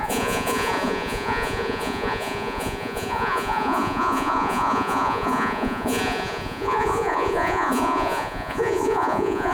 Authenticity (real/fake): fake